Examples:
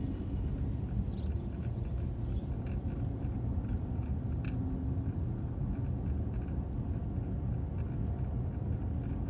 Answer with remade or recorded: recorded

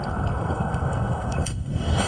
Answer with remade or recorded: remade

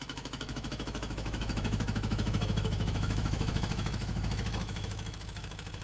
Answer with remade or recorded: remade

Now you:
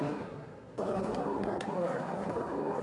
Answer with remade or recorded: remade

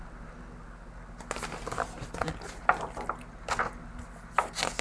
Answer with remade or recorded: recorded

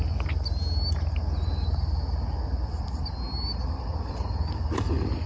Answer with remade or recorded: recorded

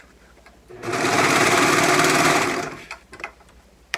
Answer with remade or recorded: remade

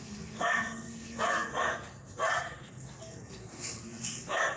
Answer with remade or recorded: remade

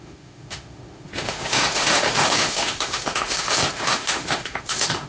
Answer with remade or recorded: remade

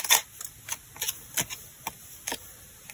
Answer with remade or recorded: recorded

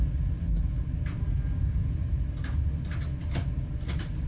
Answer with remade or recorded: recorded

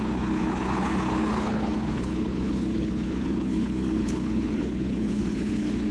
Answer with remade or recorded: remade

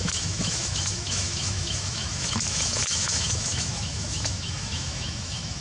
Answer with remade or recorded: remade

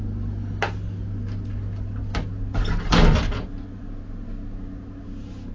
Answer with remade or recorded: recorded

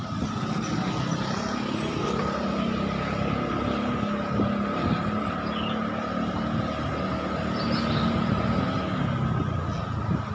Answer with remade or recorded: recorded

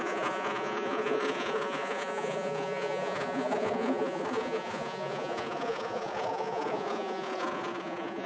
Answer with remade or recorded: remade